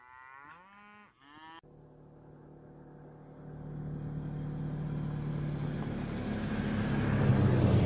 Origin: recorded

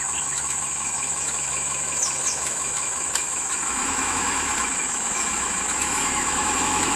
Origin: remade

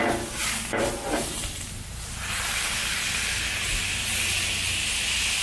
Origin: recorded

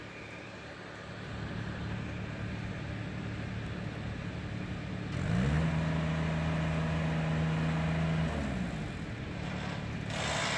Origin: recorded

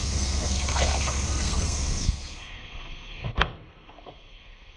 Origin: remade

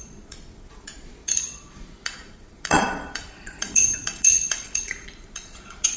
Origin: remade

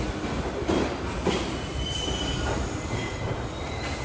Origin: recorded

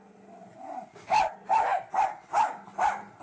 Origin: recorded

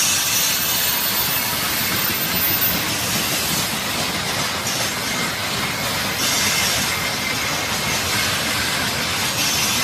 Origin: recorded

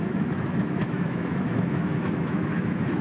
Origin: remade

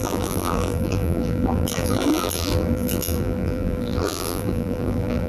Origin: remade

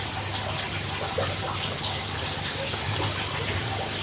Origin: recorded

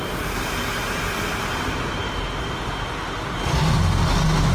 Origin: recorded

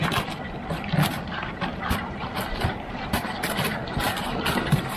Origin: remade